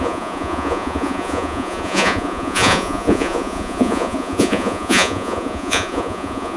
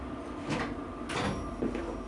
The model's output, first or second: first